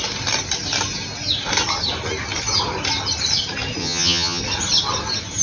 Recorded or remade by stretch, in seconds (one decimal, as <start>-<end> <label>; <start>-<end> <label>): 0.0-3.8 recorded; 3.8-4.4 remade; 4.4-5.4 recorded